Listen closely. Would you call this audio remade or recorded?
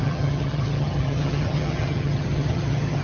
remade